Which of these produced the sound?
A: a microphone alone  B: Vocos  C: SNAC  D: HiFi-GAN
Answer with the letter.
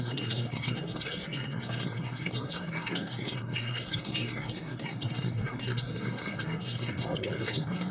C